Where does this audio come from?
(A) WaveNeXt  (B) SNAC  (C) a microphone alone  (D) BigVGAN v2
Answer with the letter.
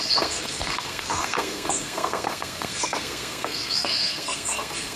B